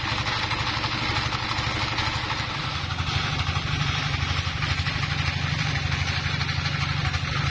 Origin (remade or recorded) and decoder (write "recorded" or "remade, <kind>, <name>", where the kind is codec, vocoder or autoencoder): recorded